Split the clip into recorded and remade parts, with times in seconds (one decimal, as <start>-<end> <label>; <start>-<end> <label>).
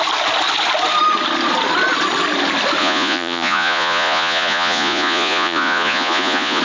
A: 0.0-2.8 recorded; 2.8-6.6 remade